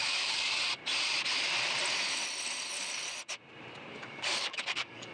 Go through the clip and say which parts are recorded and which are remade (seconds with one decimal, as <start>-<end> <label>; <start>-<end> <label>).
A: 0.0-0.8 remade; 0.8-3.9 recorded; 3.9-5.1 remade